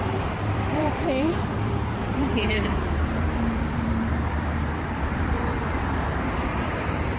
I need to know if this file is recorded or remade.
remade